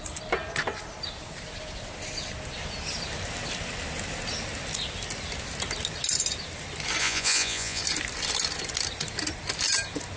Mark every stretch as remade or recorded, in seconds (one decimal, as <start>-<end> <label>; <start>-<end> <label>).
0.0-7.0 recorded; 7.0-7.8 remade; 7.8-10.2 recorded